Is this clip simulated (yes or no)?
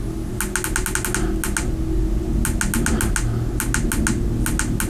no